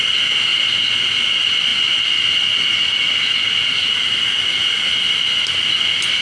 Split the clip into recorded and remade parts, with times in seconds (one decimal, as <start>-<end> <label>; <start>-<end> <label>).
0.0-6.2 recorded